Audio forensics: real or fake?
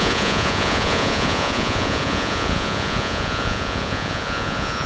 fake